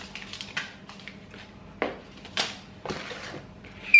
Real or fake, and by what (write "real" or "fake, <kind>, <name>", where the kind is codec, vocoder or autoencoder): real